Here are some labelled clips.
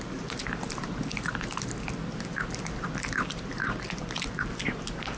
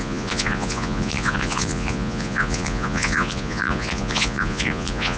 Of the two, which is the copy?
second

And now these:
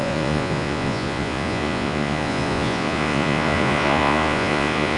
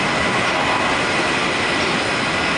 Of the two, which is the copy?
first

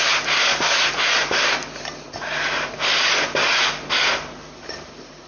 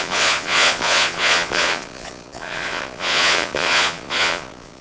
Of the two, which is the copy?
second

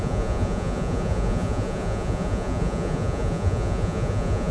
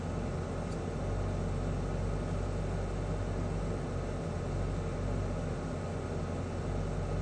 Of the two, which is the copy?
first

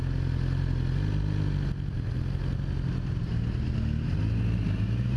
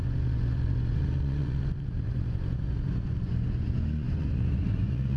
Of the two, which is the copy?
second